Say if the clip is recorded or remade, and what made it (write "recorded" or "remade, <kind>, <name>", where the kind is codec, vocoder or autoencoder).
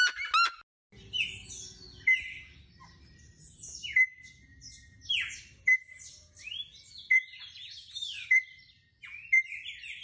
recorded